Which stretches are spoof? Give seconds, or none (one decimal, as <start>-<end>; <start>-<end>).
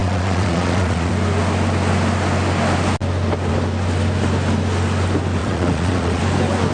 0.0-1.1; 5.4-6.2